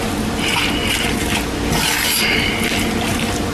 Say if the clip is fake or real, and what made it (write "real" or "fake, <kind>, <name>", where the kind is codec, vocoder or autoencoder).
real